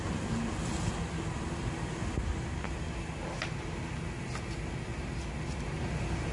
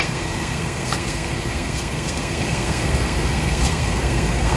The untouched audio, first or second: first